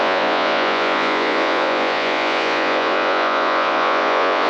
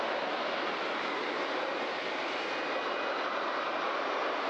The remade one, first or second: first